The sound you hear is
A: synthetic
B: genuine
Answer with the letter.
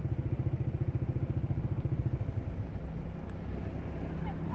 B